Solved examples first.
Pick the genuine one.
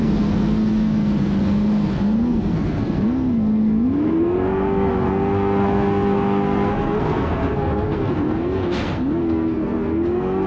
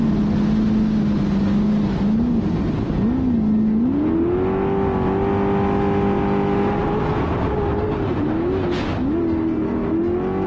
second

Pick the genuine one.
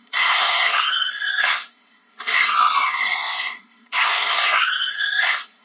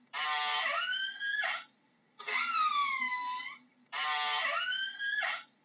second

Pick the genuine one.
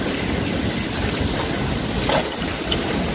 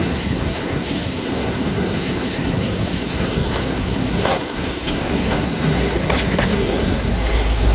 first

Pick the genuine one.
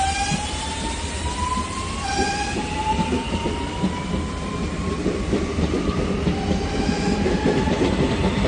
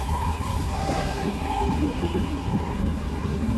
first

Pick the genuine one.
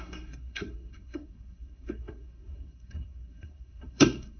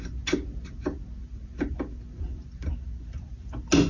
second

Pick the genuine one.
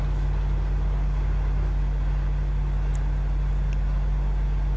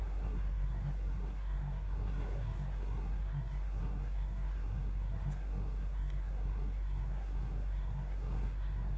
first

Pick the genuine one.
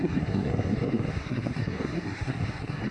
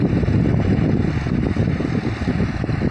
second